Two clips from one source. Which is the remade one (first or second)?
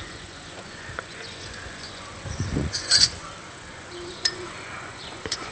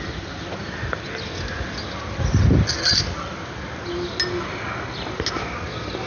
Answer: first